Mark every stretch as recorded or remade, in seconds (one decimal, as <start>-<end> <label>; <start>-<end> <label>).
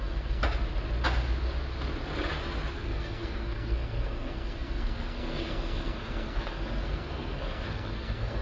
0.0-0.4 remade; 0.4-2.7 recorded; 2.7-8.4 remade